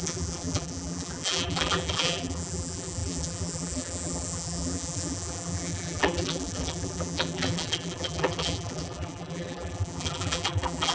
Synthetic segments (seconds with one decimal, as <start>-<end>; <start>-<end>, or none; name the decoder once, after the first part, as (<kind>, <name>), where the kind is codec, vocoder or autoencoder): 0.0-10.9 (vocoder, BigVGAN v2)